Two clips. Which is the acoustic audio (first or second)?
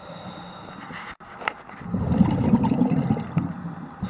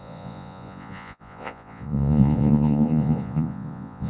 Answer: first